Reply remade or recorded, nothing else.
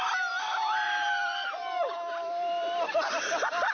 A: remade